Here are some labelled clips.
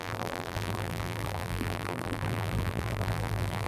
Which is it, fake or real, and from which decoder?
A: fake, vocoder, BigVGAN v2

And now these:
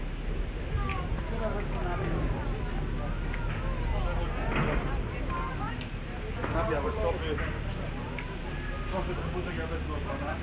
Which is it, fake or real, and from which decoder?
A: real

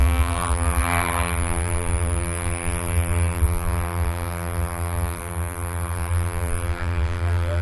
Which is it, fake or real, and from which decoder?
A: fake, vocoder, BigVGAN v2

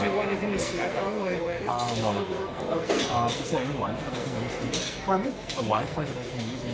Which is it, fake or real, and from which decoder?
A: fake, codec, SNAC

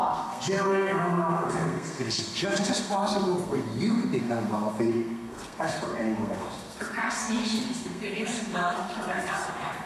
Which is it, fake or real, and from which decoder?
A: fake, codec, SNAC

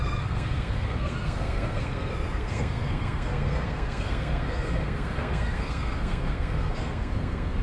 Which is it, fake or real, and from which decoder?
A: fake, codec, SNAC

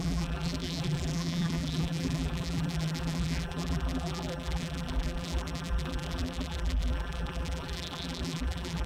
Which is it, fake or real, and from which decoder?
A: fake, vocoder, BigVGAN v2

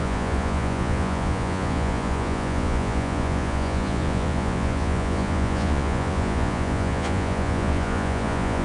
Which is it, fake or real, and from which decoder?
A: fake, vocoder, Vocos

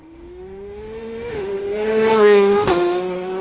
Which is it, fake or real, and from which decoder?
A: fake, autoencoder, DAC-VAE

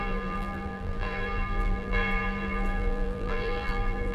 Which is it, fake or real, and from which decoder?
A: fake, vocoder, BigVGAN v2